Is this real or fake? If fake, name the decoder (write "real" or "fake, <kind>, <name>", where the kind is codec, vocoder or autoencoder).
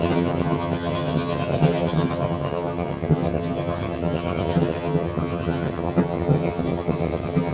fake, vocoder, HiFi-GAN